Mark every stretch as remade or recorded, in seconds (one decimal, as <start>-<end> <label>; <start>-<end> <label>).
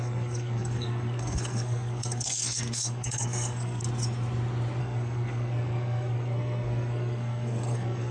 0.0-3.8 remade; 3.8-4.8 recorded; 4.8-8.1 remade